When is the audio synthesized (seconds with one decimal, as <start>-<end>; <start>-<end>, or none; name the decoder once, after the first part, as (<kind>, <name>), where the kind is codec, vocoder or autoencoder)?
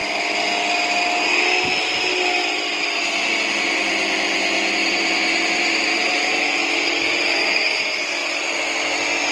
4.7-8.2 (vocoder, BigVGAN v2)